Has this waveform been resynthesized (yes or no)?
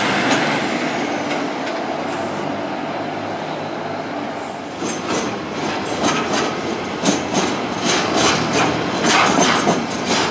no